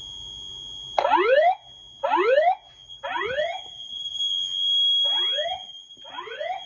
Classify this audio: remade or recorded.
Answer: recorded